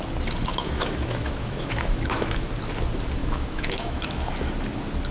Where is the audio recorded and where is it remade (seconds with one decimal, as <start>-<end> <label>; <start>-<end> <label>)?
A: 0.0-0.5 recorded; 0.5-2.5 remade; 2.5-3.2 recorded; 3.2-4.3 remade; 4.3-5.1 recorded